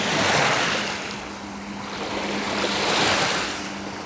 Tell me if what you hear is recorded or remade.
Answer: recorded